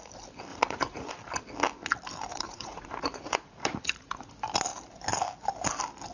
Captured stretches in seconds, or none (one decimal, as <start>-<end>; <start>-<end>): 0.0-0.5; 1.1-2.3; 4.3-6.1